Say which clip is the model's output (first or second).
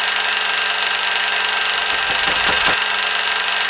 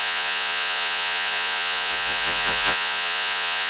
second